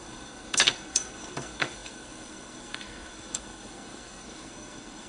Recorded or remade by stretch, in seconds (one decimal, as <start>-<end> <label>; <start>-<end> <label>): 0.0-5.1 remade